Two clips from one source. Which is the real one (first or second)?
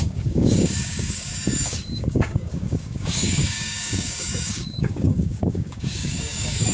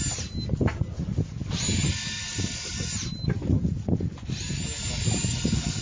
second